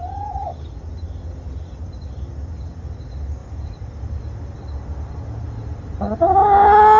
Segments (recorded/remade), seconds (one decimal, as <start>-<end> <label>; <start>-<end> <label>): 0.0-7.0 recorded